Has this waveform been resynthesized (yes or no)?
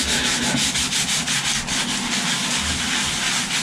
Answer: no